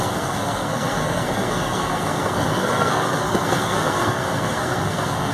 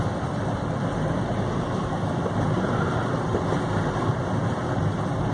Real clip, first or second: second